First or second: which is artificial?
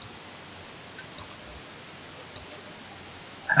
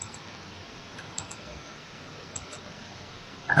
second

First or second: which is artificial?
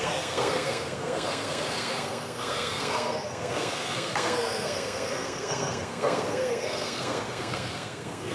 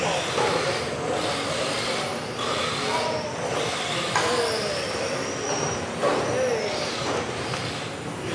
first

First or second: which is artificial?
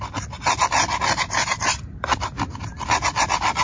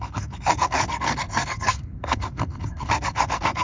second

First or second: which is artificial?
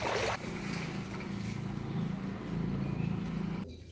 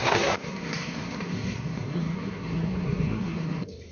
second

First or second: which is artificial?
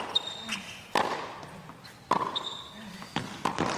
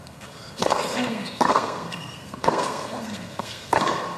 second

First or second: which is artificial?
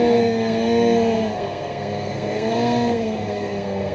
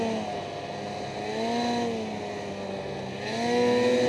first